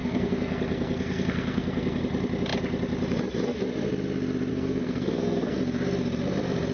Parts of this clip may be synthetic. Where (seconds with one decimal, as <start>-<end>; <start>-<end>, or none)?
0.0-2.0; 4.5-5.6